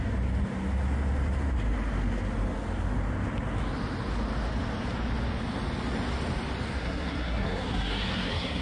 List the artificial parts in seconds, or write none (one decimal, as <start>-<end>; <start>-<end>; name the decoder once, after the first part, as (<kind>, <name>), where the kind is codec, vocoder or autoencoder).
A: 6.8-8.6 (codec, SNAC)